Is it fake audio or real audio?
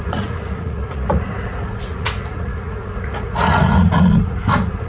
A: fake